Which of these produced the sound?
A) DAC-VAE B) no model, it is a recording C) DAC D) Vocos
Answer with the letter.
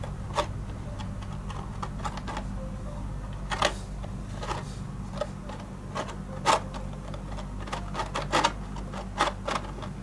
B